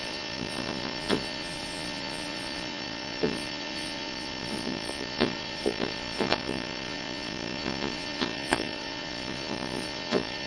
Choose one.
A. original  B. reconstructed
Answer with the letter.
B